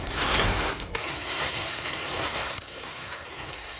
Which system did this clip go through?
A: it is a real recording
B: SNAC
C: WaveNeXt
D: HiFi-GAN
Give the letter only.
B